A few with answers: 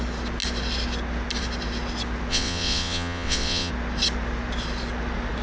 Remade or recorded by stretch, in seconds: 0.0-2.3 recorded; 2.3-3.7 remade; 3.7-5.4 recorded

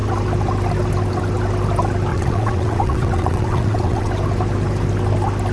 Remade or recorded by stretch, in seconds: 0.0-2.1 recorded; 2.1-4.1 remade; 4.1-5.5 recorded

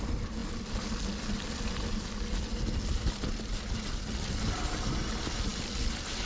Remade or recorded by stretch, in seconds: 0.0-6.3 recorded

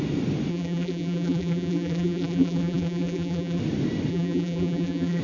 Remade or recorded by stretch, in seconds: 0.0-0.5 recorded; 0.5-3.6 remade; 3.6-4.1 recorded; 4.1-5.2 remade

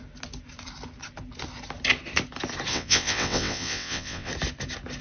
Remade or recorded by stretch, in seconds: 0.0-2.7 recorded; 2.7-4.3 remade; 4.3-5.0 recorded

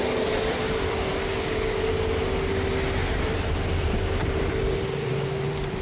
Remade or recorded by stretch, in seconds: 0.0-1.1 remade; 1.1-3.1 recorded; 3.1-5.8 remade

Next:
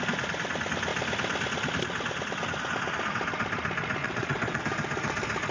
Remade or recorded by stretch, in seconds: 0.0-4.0 recorded; 4.0-4.6 remade; 4.6-5.5 recorded

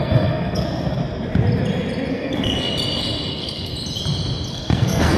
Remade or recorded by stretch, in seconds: 0.0-1.0 remade; 1.0-2.1 recorded; 2.1-2.7 remade; 2.7-3.3 recorded; 3.3-3.7 remade; 3.7-4.5 recorded; 4.5-5.2 remade